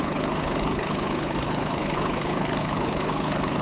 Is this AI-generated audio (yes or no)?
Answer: yes